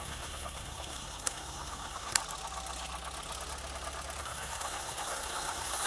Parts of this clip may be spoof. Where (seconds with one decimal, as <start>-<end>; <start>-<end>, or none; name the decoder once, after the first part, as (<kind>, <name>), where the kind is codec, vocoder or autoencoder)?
0.0-2.2 (codec, SNAC); 4.2-5.9